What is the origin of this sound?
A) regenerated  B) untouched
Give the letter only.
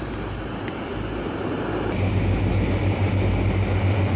B